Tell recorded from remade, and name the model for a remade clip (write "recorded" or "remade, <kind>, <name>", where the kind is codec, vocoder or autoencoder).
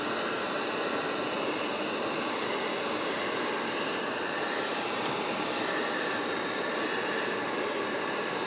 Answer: recorded